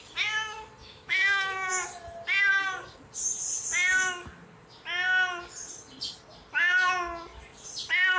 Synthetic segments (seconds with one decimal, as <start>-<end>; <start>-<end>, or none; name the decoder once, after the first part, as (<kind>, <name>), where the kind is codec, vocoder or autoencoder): 0.8-1.7 (autoencoder, DAC-VAE)